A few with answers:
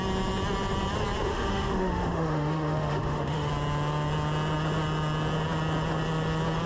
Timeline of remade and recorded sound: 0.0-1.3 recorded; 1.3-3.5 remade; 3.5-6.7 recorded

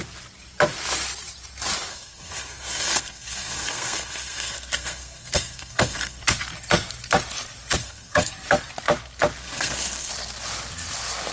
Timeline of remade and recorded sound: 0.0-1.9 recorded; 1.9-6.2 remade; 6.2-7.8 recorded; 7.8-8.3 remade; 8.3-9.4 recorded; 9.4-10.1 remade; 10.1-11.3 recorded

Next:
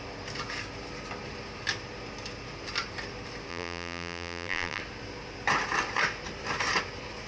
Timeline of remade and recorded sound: 0.0-3.5 recorded; 3.5-4.8 remade; 4.8-7.3 recorded

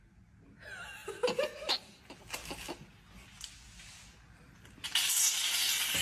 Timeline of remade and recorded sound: 0.0-6.0 recorded